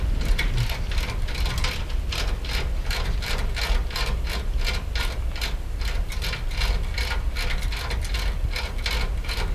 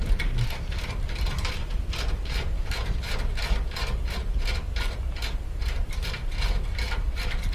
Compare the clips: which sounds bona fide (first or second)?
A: first